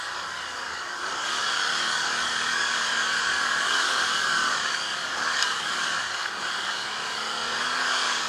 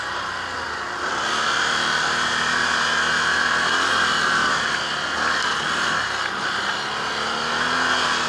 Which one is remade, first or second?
first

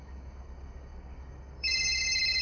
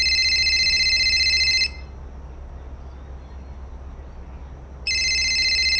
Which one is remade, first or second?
first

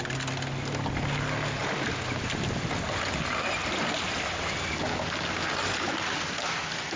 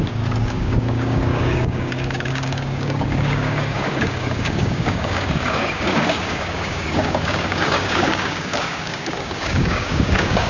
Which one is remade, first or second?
second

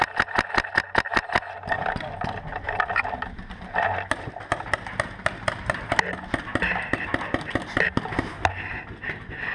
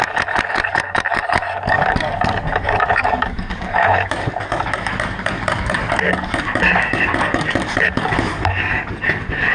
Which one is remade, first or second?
second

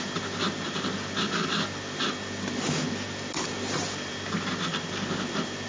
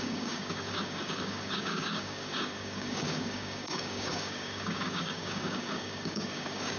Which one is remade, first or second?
second